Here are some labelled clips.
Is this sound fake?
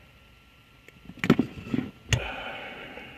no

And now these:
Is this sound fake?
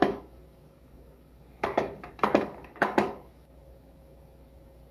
yes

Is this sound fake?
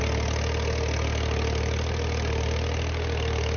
no